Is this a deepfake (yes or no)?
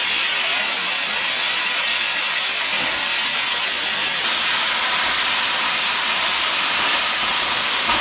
no